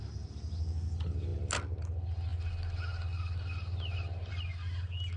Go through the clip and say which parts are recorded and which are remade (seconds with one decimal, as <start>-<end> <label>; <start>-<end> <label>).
0.0-5.2 recorded